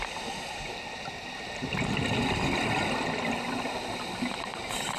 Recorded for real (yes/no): yes